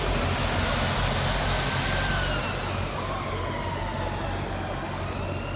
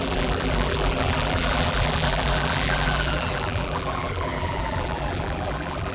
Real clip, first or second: first